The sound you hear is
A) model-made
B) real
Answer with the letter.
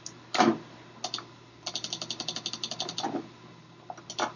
B